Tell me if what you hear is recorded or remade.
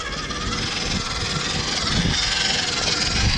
recorded